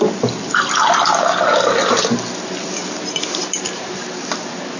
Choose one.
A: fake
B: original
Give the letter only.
B